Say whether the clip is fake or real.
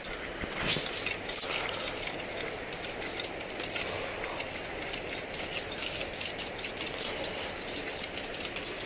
real